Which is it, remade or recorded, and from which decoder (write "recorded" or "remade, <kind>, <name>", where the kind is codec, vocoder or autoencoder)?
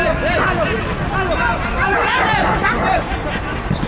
recorded